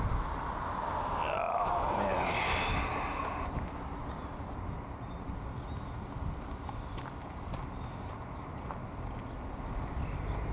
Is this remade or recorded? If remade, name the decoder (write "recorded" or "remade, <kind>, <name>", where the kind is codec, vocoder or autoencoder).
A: recorded